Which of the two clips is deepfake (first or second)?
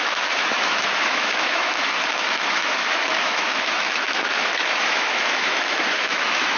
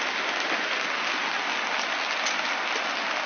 first